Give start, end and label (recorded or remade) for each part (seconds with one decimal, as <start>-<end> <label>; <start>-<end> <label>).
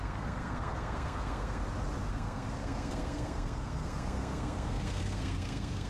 0.0-1.6 remade; 1.6-2.1 recorded; 2.1-5.9 remade